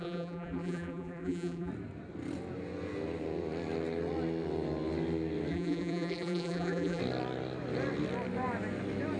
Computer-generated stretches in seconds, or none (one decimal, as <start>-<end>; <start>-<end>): 0.0-1.7; 5.5-7.0